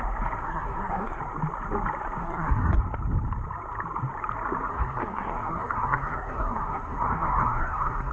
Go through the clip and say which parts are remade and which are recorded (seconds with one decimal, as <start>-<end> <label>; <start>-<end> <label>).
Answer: 0.0-0.4 recorded; 0.4-1.2 remade; 1.2-2.2 recorded; 2.2-2.8 remade; 2.8-4.7 recorded; 4.7-8.1 remade